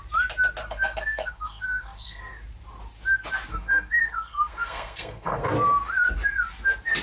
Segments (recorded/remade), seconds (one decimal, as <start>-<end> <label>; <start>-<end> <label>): 0.0-0.6 recorded; 0.6-2.2 remade; 2.2-3.5 recorded; 3.5-5.5 remade; 5.5-7.0 recorded

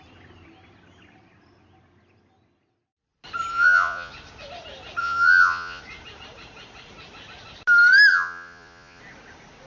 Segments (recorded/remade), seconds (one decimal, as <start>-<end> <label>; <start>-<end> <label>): 0.0-3.5 recorded; 3.5-4.1 remade; 4.1-5.0 recorded; 5.0-5.8 remade; 5.8-8.1 recorded; 8.1-9.0 remade; 9.0-9.7 recorded